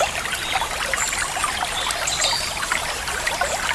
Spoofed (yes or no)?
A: yes